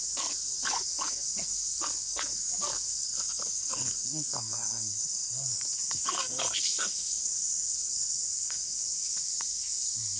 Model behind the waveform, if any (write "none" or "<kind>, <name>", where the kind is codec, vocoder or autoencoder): codec, SNAC